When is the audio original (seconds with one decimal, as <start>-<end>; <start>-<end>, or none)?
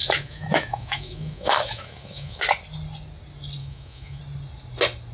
2.4-3.6; 4.2-5.1